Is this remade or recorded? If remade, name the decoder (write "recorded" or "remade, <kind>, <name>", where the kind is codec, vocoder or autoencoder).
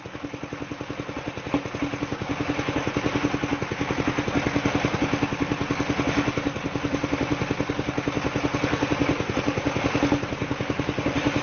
recorded